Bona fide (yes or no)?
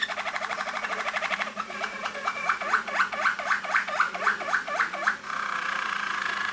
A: no